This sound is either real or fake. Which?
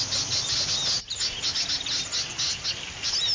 real